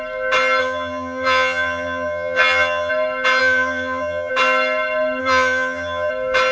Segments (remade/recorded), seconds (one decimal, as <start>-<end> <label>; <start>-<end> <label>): 0.0-0.6 recorded; 0.6-2.9 remade; 2.9-3.4 recorded; 3.4-4.3 remade; 4.3-5.2 recorded; 5.2-6.1 remade; 6.1-6.5 recorded